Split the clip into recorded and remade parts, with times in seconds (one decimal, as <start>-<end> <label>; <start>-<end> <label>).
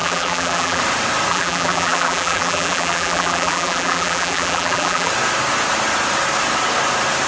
0.0-0.8 remade; 0.8-1.3 recorded; 1.3-5.1 remade; 5.1-7.3 recorded